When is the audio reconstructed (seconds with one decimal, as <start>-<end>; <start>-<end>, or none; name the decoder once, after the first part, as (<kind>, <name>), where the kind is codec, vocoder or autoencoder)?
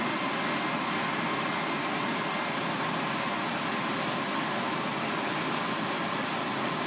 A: none